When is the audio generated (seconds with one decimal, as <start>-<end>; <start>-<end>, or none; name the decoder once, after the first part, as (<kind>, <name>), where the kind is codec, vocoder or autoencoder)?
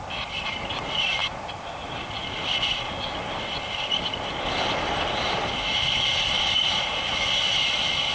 5.7-6.9 (vocoder, BigVGAN v2)